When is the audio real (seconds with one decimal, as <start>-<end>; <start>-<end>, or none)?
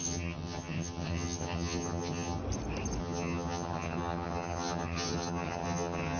2.4-3.0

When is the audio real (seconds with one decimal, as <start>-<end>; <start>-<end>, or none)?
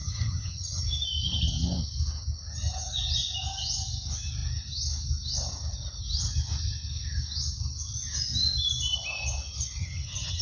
0.8-9.8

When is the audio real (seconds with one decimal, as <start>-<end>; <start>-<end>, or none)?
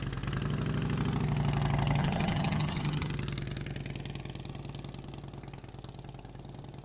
0.0-2.0; 3.1-6.8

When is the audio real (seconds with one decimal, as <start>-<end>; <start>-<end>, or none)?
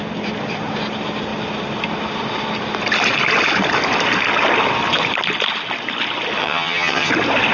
0.0-6.4; 7.1-7.5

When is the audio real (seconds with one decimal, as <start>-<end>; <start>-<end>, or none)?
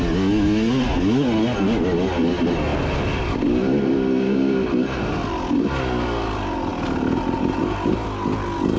0.0-8.8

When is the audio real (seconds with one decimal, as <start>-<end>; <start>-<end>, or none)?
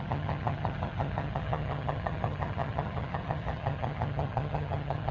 none